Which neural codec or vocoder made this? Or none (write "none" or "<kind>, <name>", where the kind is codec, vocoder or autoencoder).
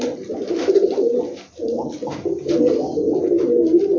none